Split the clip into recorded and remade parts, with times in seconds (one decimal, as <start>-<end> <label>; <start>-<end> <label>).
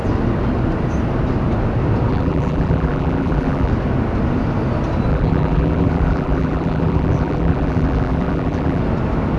0.0-2.1 recorded; 2.1-3.7 remade; 3.7-5.1 recorded; 5.1-8.8 remade; 8.8-9.4 recorded